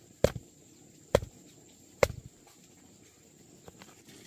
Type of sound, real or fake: real